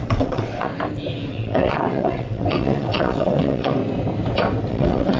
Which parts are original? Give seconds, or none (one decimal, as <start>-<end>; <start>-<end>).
0.7-1.3; 3.8-4.7